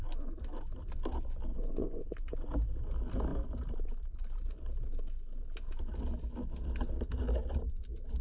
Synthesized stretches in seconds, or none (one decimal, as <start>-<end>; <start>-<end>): 1.5-2.2